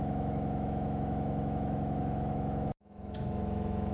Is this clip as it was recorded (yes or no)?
no